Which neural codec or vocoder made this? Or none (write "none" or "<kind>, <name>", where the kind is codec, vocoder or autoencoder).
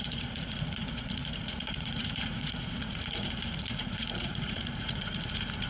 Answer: vocoder, Vocos